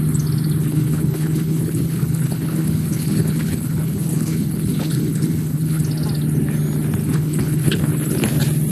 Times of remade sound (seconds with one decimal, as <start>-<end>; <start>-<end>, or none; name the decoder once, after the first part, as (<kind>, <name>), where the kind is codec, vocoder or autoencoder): 0.6-5.8 (codec, HILCodec); 7.0-7.9